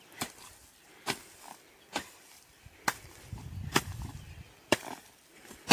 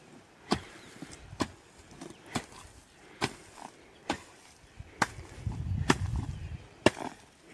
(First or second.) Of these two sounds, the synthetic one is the first